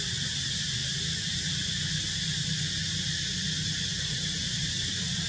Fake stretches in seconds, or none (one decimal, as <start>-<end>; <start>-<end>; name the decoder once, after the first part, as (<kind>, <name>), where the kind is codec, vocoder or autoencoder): 0.0-0.8 (vocoder, BigVGAN v2); 4.0-5.3